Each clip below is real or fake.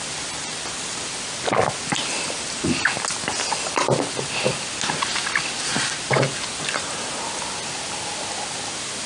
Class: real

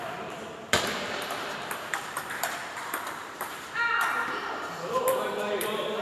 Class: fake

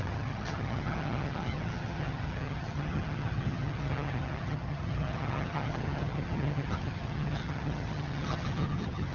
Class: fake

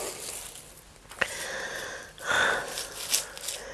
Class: real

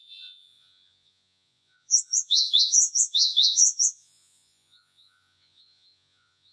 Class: fake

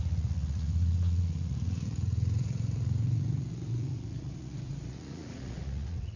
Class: fake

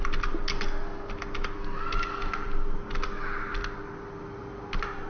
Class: real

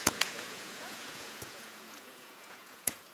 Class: fake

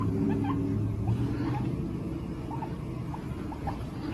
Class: real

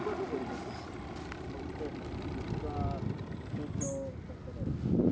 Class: real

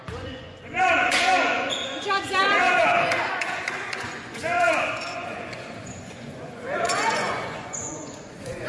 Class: fake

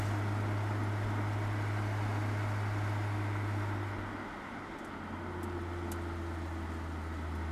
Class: real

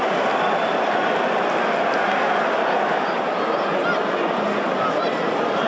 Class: real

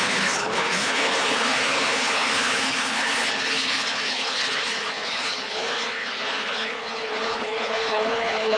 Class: fake